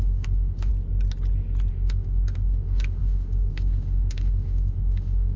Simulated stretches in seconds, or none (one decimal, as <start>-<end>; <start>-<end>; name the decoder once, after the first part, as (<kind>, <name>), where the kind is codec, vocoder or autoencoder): 0.0-0.7 (autoencoder, DAC-VAE); 1.7-5.4